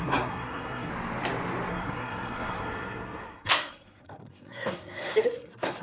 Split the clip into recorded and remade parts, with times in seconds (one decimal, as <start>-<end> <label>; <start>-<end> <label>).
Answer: 0.0-0.9 remade; 0.9-1.7 recorded; 1.7-5.8 remade